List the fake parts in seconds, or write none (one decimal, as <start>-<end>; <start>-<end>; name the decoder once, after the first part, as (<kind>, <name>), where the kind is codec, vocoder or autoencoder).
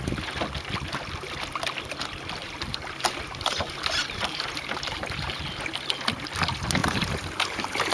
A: 2.4-5.3 (vocoder, BigVGAN v2); 6.8-7.9